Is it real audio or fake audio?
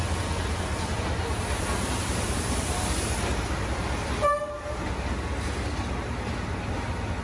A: real